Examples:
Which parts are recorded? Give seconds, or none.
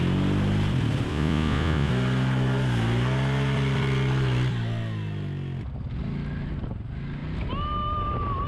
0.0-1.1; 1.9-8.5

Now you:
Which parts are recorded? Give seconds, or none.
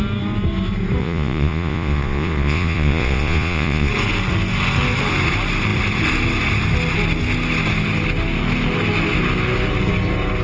0.0-1.0; 3.9-10.4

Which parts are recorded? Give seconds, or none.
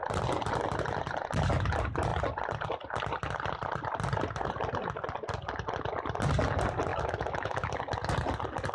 0.0-6.9; 7.7-8.7